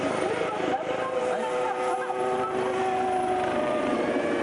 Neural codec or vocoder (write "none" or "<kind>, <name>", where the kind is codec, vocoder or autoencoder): vocoder, BigVGAN v2